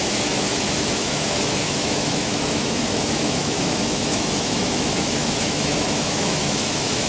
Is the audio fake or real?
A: fake